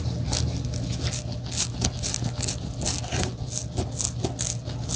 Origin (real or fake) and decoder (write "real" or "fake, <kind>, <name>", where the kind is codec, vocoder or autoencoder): real